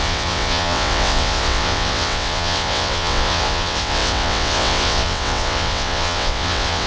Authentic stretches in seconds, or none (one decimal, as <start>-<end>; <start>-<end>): none